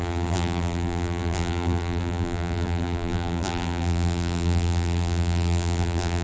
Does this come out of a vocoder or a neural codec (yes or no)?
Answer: yes